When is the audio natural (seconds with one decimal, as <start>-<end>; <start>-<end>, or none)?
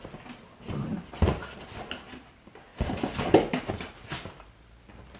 0.0-5.2